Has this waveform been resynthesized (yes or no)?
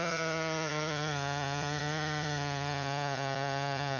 yes